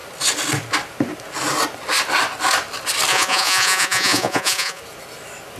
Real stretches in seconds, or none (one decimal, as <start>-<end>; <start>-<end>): 0.0-3.1; 4.8-5.6

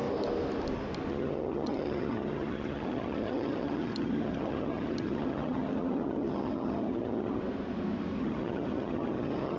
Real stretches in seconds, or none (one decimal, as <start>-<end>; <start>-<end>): 0.0-1.1; 7.4-8.2

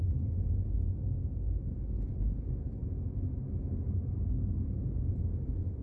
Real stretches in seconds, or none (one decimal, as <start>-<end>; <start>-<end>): 0.0-5.8

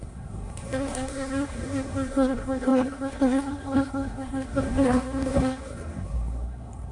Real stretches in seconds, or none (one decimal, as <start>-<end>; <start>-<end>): none